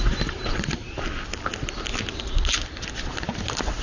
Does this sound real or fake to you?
real